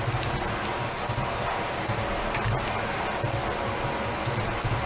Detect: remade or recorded recorded